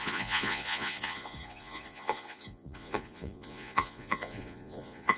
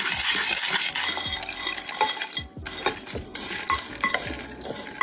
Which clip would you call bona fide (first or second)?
second